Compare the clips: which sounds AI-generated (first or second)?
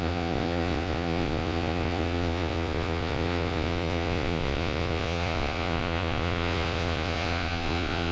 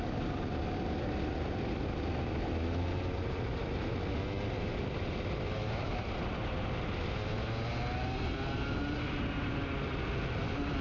first